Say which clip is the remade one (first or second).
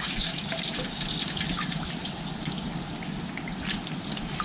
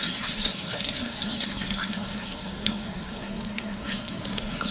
second